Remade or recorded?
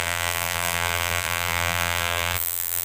remade